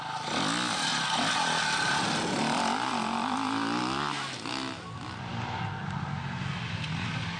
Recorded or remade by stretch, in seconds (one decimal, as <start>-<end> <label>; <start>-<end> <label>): 0.0-7.4 recorded